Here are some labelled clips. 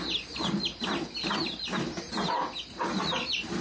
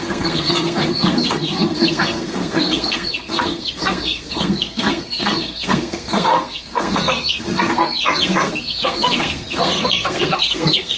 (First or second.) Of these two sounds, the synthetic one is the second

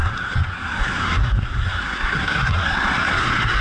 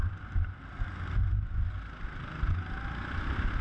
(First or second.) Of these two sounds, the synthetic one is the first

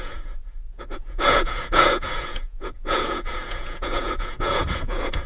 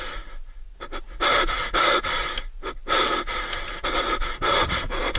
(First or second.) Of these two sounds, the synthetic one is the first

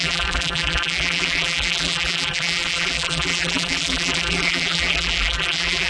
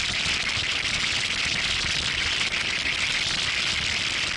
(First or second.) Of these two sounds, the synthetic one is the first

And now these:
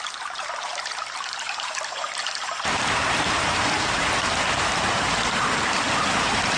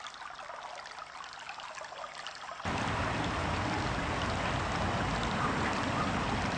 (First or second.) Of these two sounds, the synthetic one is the first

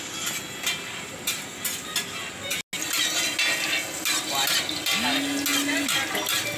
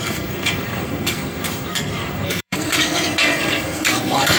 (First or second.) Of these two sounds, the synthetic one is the second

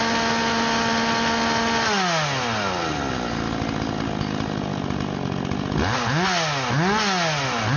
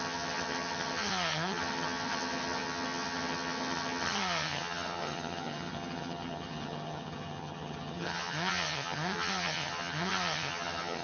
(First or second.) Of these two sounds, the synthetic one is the second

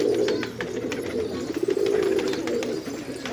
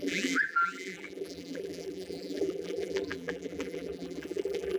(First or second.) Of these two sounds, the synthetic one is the second